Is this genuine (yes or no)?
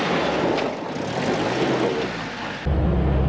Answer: yes